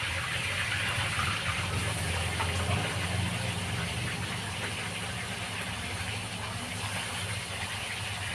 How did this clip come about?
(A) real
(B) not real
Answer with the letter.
A